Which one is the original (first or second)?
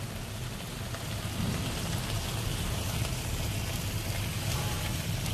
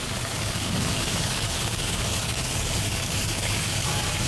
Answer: first